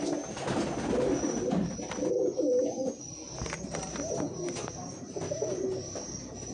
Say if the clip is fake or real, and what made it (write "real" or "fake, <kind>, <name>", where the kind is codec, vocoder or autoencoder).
real